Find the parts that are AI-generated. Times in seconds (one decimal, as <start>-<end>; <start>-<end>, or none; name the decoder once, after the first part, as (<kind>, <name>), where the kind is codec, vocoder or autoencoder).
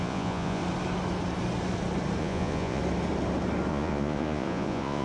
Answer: 0.0-0.6 (vocoder, Vocos); 2.2-2.8; 3.7-5.0